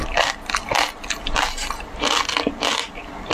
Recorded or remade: recorded